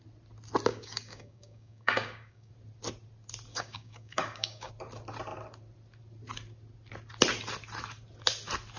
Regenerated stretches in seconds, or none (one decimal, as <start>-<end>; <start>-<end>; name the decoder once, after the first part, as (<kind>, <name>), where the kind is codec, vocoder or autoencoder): 0.7-2.5 (codec, DAC); 3.5-4.7